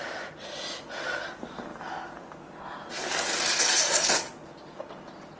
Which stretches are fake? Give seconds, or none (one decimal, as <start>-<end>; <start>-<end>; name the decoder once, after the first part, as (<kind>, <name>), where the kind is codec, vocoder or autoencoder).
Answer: none